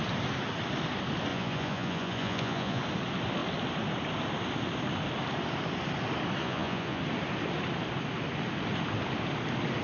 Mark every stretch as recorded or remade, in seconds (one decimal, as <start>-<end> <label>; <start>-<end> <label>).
0.0-1.3 recorded; 1.3-2.8 remade; 2.8-6.4 recorded; 6.4-7.0 remade; 7.0-9.8 recorded